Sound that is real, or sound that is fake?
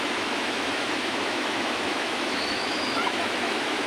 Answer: fake